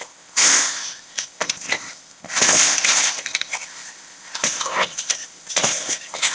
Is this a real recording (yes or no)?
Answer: no